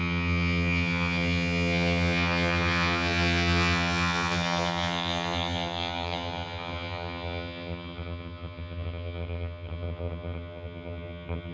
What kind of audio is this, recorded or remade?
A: remade